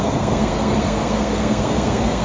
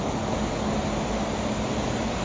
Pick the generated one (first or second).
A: first